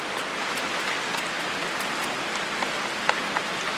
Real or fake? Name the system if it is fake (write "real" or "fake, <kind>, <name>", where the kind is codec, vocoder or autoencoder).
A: real